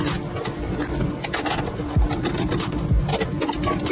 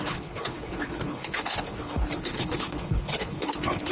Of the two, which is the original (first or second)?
first